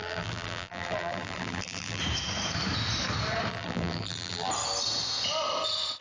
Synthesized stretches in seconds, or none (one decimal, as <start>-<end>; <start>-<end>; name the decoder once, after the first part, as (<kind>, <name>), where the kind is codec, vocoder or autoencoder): 0.0-2.0 (vocoder, BigVGAN v2); 3.5-4.5